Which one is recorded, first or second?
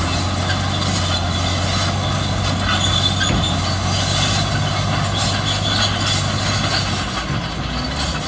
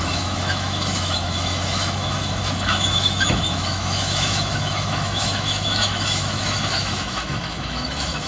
first